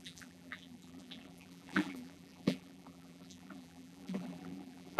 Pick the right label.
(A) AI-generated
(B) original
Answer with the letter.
A